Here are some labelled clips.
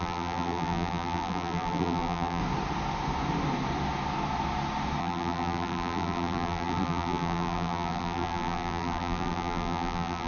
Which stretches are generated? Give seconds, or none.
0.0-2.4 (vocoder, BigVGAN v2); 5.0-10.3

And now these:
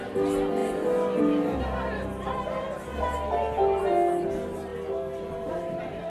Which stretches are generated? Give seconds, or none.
none

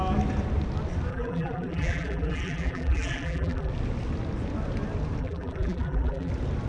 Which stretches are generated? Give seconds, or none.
1.1-3.7 (vocoder, BigVGAN v2); 5.2-6.3

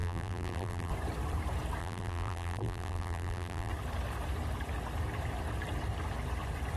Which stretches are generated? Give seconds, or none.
0.0-0.9 (vocoder, BigVGAN v2); 1.8-3.7

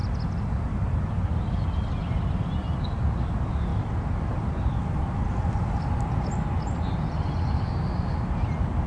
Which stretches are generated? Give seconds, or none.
none

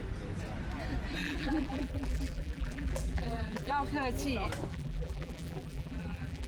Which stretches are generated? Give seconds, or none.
1.2-3.7 (vocoder, BigVGAN v2); 4.7-6.5